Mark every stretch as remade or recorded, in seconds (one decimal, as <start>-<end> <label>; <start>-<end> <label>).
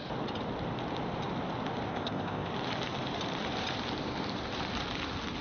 0.0-1.9 recorded; 1.9-2.5 remade; 2.5-5.4 recorded